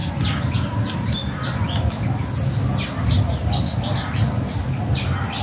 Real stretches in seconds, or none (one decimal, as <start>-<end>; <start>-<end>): 0.0-5.4